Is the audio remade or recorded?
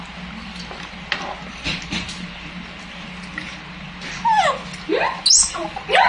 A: recorded